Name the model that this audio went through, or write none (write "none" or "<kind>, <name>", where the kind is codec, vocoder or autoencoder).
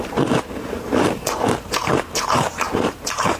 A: vocoder, BigVGAN v2